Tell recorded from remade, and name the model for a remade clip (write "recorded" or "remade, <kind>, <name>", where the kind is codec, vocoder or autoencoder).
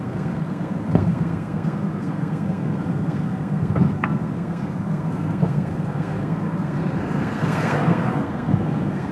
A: remade, codec, SNAC